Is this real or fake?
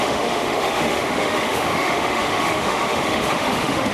fake